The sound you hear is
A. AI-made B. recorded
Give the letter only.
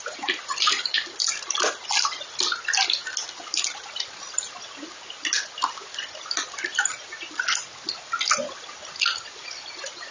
B